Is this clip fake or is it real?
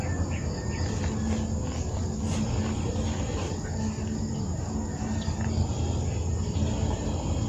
real